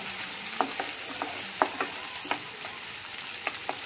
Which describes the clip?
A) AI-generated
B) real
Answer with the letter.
B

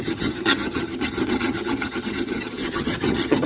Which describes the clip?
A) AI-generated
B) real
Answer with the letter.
A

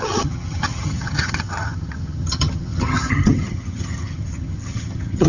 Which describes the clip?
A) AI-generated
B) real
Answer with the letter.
A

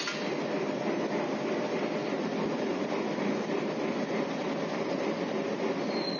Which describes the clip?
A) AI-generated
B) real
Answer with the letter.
B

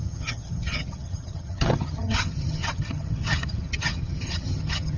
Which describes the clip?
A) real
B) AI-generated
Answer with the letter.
B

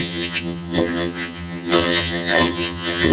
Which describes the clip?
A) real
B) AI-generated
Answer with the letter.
B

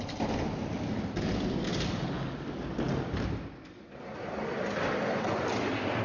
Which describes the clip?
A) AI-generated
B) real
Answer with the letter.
B